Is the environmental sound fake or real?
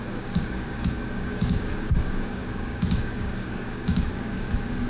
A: fake